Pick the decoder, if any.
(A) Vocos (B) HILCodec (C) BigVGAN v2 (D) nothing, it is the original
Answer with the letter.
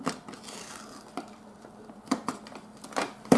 C